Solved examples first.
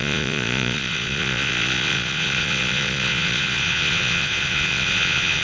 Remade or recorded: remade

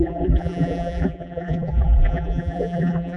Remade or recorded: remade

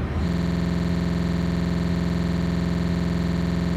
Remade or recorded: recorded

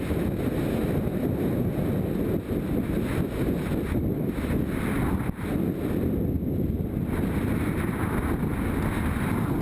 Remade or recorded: recorded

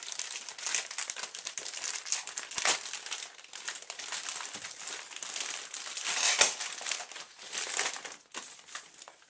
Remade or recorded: recorded